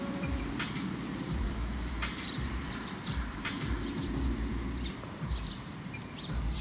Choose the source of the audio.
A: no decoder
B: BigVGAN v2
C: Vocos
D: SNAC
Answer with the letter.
B